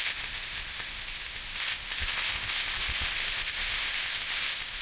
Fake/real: fake